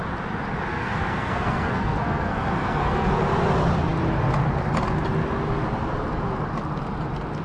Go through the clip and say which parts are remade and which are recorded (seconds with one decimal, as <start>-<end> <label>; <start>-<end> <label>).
0.0-0.7 recorded; 0.7-3.1 remade; 3.1-7.4 recorded